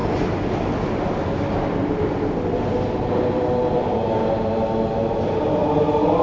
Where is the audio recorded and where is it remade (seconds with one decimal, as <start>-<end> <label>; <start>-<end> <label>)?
0.0-6.2 recorded